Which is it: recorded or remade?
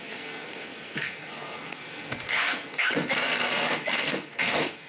remade